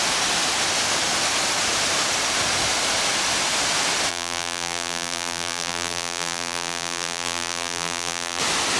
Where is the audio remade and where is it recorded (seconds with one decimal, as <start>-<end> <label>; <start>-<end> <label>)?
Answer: 0.0-4.1 recorded; 4.1-8.4 remade; 8.4-8.8 recorded